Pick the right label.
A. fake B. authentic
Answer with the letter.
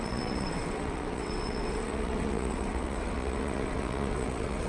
A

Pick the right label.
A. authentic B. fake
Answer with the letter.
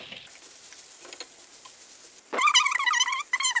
A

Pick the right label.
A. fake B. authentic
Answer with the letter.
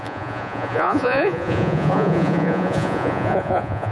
A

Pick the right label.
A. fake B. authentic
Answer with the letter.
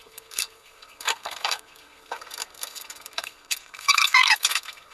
A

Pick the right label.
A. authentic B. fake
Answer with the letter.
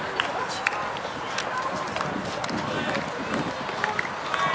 A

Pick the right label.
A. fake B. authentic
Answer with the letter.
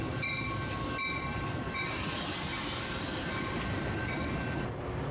B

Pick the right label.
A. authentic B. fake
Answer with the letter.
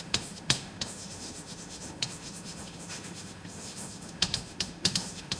B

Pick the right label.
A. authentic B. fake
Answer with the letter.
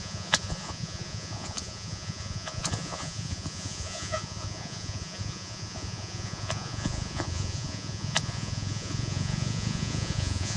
B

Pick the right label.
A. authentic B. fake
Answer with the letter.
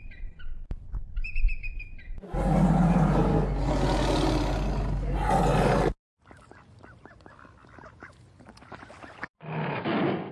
A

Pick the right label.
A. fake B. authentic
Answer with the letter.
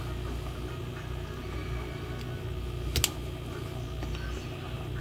B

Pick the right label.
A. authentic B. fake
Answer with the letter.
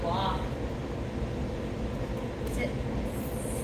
A